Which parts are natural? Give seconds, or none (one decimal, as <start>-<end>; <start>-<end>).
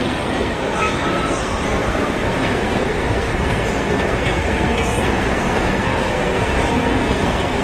none